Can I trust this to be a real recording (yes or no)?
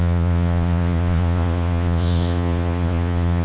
no